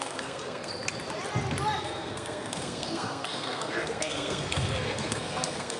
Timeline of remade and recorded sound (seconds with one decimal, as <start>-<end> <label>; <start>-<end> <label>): 0.0-0.7 remade; 0.7-1.8 recorded; 1.8-5.8 remade